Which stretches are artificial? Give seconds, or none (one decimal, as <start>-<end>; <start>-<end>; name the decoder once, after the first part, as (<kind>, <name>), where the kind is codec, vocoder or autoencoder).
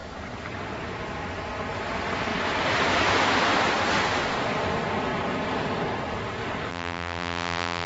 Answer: 6.7-7.9 (vocoder, BigVGAN v2)